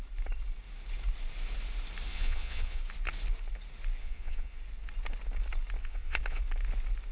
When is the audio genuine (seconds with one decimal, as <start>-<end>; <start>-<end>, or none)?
0.0-2.1; 2.8-4.0; 4.6-5.8; 6.4-7.1